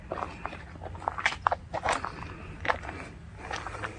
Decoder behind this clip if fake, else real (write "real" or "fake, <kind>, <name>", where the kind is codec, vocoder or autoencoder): real